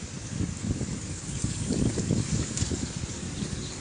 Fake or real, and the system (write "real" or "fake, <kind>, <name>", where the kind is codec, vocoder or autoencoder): fake, codec, DAC